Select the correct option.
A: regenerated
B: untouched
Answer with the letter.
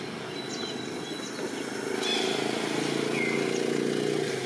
B